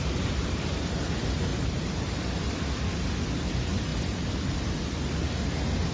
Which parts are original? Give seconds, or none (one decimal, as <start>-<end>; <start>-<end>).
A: 0.0-5.9